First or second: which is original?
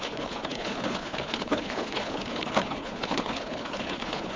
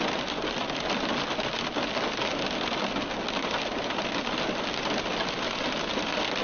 second